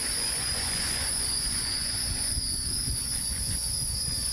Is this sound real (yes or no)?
no